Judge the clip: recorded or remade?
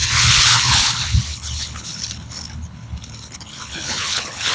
remade